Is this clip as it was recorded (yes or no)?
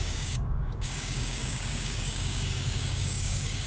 no